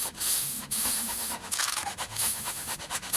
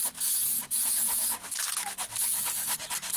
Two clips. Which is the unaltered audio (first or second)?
second